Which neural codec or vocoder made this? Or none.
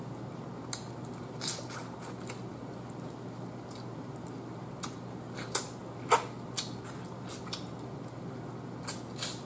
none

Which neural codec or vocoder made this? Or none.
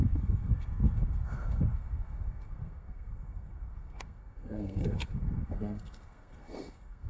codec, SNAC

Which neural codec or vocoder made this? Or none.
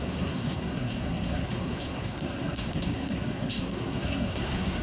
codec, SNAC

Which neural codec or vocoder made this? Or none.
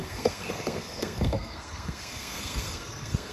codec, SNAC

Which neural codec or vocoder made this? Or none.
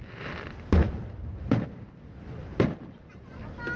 none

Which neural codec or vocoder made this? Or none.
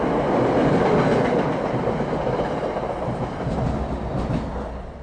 none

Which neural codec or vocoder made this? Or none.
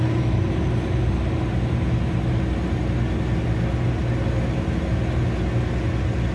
none